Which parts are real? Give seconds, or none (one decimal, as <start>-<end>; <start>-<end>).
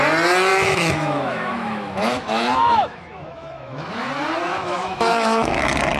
0.0-0.5; 4.1-4.5; 5.6-6.0